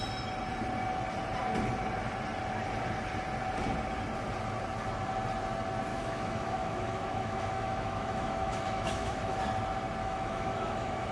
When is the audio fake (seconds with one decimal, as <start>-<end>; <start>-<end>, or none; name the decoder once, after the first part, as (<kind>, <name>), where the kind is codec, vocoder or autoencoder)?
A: 5.9-9.4 (autoencoder, DAC-VAE); 10.0-11.1